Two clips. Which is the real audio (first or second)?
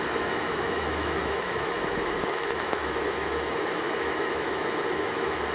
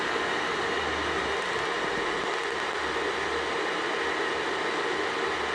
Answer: second